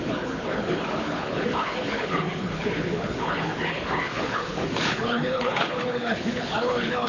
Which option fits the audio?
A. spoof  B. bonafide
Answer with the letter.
A